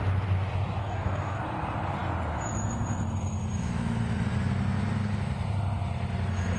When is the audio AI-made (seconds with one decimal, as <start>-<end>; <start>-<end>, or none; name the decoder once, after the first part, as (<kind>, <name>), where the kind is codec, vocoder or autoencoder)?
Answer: 0.8-1.4 (codec, DAC)